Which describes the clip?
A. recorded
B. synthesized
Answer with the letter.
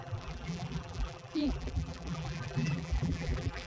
B